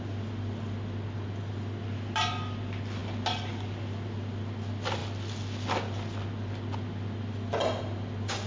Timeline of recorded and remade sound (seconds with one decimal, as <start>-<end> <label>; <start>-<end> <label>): 0.0-8.5 recorded

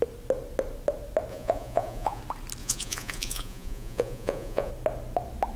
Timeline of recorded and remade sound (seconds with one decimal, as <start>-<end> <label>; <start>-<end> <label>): 0.0-1.3 recorded; 1.3-2.2 remade; 2.2-2.6 recorded; 2.6-4.7 remade; 4.7-5.6 recorded

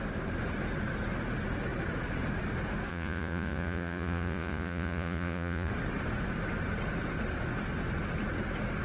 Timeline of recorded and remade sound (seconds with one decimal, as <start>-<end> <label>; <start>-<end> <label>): 0.0-2.9 recorded; 2.9-5.7 remade; 5.7-8.8 recorded

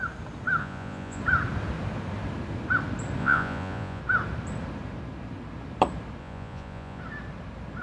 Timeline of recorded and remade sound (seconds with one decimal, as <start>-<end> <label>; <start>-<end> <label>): 0.0-0.6 recorded; 0.6-1.2 remade; 1.2-3.2 recorded; 3.2-4.0 remade; 4.0-6.2 recorded; 6.2-7.0 remade; 7.0-7.8 recorded

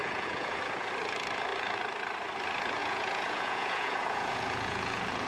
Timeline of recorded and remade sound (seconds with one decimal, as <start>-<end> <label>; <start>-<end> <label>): 0.0-0.9 remade; 0.9-2.8 recorded; 2.8-5.3 remade

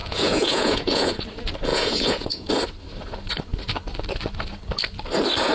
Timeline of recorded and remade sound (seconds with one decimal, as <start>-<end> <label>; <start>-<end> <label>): 0.0-1.1 remade; 1.1-1.7 recorded; 1.7-2.5 remade; 2.5-5.5 recorded

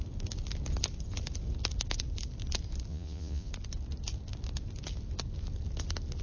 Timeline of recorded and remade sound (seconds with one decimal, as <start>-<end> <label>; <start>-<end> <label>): 0.0-2.9 recorded; 2.9-3.5 remade; 3.5-6.2 recorded